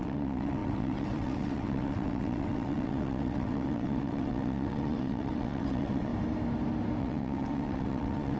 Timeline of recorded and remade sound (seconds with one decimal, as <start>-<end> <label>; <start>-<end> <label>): 0.0-6.1 remade; 6.1-7.0 recorded; 7.0-8.4 remade

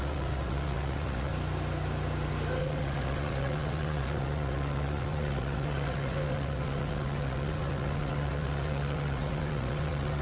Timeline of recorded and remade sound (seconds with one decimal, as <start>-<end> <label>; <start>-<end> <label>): 0.0-1.3 remade; 1.3-2.6 recorded; 2.6-10.2 remade

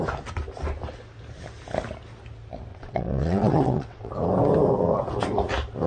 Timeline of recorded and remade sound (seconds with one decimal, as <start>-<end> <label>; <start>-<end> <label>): 0.0-2.7 recorded; 2.7-4.1 remade; 4.1-5.9 recorded

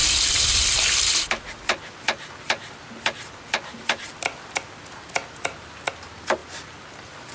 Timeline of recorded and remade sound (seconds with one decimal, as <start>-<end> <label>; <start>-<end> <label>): 0.0-7.3 recorded